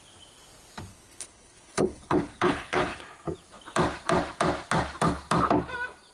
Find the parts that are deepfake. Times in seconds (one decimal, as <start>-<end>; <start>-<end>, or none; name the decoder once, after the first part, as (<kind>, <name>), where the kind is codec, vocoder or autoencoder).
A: 0.9-3.0 (codec, HILCodec)